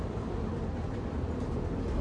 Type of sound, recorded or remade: recorded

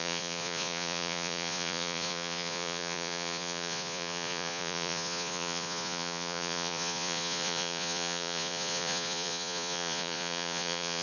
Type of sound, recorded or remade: remade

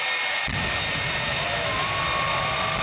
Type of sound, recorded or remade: recorded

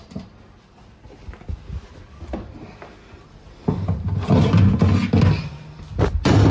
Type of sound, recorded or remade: recorded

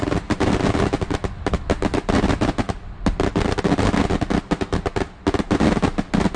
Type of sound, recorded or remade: recorded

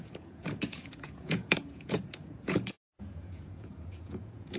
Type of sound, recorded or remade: remade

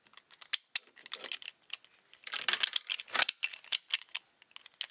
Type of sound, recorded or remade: recorded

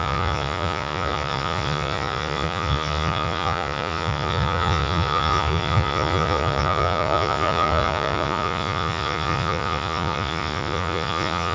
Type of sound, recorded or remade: remade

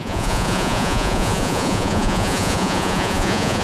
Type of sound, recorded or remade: remade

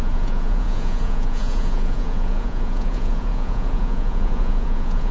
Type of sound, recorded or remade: remade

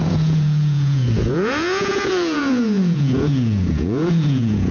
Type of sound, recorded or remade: remade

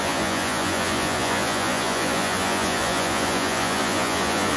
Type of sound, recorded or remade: remade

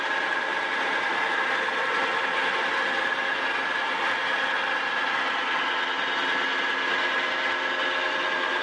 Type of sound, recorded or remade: recorded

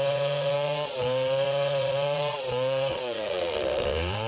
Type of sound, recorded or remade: remade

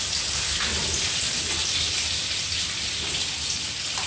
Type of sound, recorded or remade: recorded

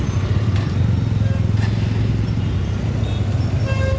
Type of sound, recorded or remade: recorded